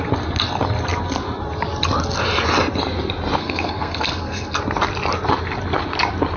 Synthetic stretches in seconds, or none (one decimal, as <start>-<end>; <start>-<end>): 3.4-4.6